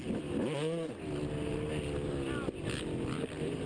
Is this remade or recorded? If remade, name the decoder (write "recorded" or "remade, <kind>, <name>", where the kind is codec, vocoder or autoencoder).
recorded